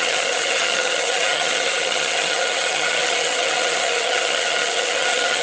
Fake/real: fake